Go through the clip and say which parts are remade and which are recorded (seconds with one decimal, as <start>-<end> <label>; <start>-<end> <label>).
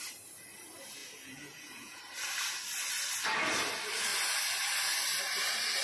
0.0-1.0 recorded; 1.0-2.0 remade; 2.0-5.8 recorded